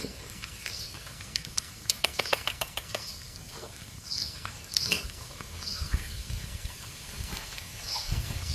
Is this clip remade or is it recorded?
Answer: remade